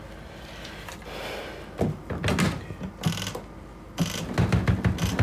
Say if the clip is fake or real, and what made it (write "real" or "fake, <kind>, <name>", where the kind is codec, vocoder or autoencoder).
real